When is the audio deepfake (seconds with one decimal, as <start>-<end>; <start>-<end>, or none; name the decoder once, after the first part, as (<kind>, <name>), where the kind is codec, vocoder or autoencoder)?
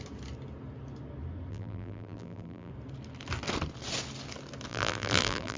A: 1.5-2.7 (vocoder, BigVGAN v2); 4.7-5.6